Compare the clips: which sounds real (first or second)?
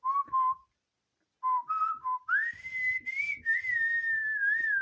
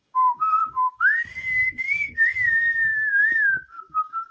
first